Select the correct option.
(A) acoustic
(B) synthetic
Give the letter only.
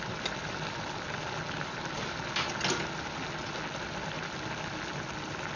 A